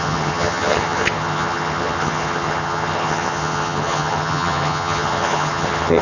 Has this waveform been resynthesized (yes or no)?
yes